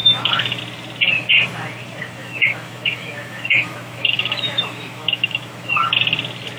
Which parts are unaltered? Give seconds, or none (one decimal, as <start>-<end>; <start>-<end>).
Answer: 0.6-2.2; 5.9-6.6

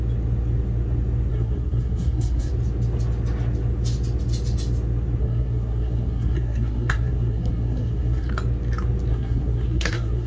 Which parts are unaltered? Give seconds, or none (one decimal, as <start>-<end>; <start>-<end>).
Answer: 0.0-1.3; 2.5-5.2; 8.3-9.1

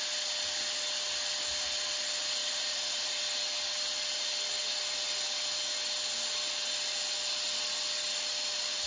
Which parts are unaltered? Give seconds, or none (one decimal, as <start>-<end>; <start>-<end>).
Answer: 0.0-2.4; 3.2-8.9